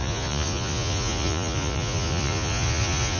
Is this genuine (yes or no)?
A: no